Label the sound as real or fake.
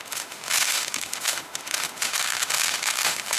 fake